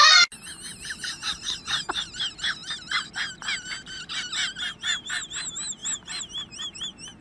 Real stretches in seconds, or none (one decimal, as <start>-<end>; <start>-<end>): 0.0-7.2